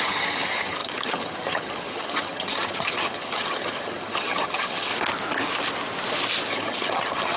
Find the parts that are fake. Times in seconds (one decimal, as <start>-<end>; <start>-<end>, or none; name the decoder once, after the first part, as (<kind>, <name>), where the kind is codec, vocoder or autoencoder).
0.0-4.9 (vocoder, HiFi-GAN); 6.5-7.4

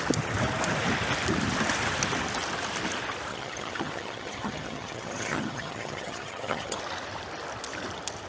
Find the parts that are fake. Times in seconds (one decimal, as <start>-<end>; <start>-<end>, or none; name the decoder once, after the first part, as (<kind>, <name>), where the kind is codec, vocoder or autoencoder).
3.3-6.8 (vocoder, HiFi-GAN)